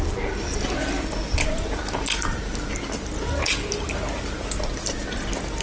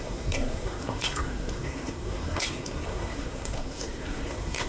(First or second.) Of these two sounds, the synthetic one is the second